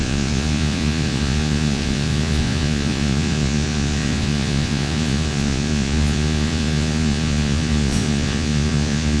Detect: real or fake fake